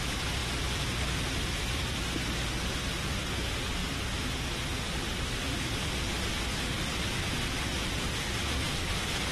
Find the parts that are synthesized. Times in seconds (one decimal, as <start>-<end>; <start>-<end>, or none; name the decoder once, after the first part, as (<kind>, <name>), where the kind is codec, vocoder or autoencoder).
3.8-5.4 (vocoder, BigVGAN v2); 6.5-7.5